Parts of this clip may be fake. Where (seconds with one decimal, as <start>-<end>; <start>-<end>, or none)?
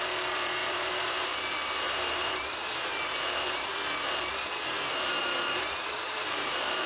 0.6-3.7; 5.1-6.9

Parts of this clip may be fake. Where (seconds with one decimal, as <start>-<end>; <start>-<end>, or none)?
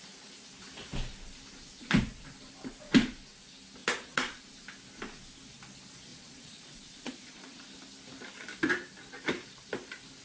3.8-4.5; 6.1-7.6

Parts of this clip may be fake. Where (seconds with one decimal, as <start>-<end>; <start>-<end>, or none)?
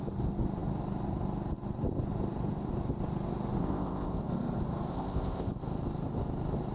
3.6-4.2; 4.9-5.5